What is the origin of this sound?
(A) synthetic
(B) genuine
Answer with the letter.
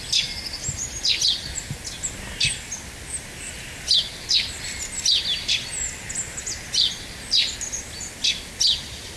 B